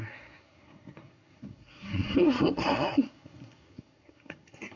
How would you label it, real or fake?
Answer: fake